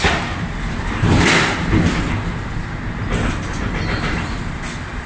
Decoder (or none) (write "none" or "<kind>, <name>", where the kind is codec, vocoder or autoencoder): none